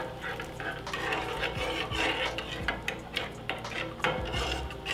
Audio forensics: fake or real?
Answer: real